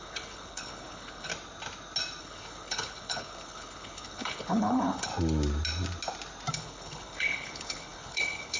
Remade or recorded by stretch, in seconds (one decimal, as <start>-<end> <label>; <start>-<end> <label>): 0.0-1.3 remade; 1.3-2.2 recorded; 2.2-5.1 remade; 5.1-6.5 recorded; 6.5-8.6 remade

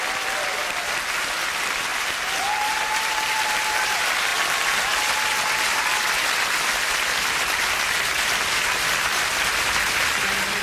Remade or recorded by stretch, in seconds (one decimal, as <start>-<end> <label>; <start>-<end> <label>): 0.0-1.9 remade; 1.9-2.9 recorded; 2.9-4.3 remade; 4.3-6.5 recorded; 6.5-9.5 remade; 9.5-10.6 recorded

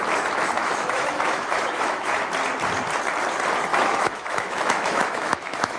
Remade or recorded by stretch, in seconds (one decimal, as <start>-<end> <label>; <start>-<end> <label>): 0.0-0.6 recorded; 0.6-2.1 remade; 2.1-3.7 recorded; 3.7-5.8 remade

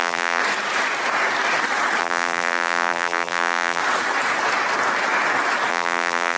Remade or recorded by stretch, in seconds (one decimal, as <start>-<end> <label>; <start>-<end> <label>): 0.0-0.4 remade; 0.4-2.0 recorded; 2.0-3.8 remade; 3.8-5.7 recorded; 5.7-6.4 remade

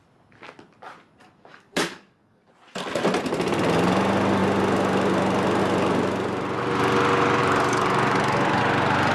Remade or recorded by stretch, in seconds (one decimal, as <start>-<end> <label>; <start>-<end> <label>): 0.0-1.2 recorded; 1.2-2.5 remade; 2.5-7.4 recorded; 7.4-8.6 remade; 8.6-9.1 recorded

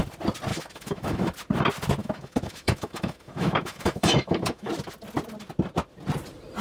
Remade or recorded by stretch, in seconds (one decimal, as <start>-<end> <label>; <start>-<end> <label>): 0.0-0.5 recorded; 0.5-1.2 remade; 1.2-2.0 recorded; 2.0-4.7 remade; 4.7-6.6 recorded

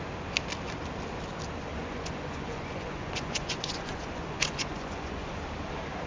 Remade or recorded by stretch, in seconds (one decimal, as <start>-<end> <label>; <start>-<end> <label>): 0.0-1.7 recorded; 1.7-5.4 remade; 5.4-6.1 recorded

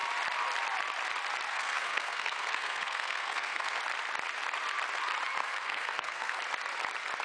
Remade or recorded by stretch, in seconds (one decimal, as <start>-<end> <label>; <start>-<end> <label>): 0.0-1.5 recorded; 1.5-3.8 remade; 3.8-5.4 recorded; 5.4-6.4 remade; 6.4-7.2 recorded